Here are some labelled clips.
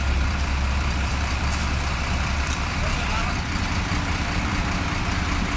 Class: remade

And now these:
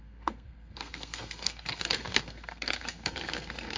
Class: remade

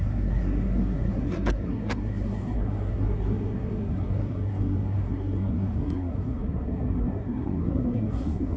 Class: remade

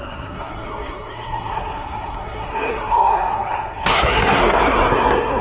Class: remade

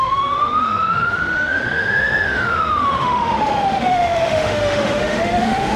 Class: remade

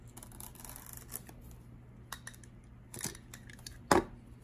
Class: recorded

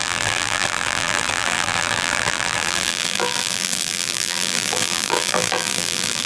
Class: remade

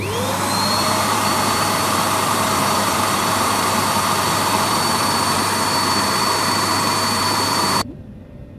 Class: remade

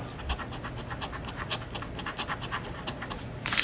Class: recorded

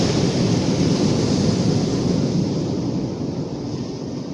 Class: recorded